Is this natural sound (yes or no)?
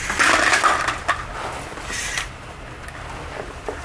yes